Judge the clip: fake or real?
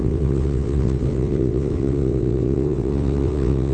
fake